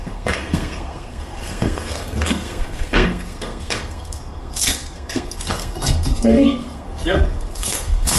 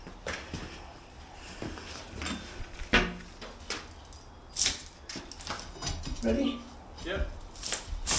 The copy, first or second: first